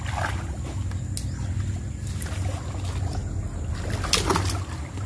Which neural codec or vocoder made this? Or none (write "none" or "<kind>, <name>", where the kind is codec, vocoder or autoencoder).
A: none